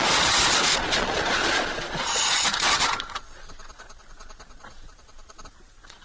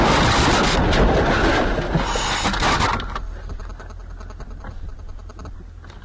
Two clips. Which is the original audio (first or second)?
second